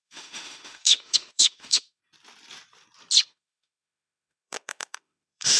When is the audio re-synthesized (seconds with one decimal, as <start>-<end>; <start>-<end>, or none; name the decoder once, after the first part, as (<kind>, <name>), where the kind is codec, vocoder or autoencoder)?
0.0-2.0 (autoencoder, DAC-VAE); 3.3-5.6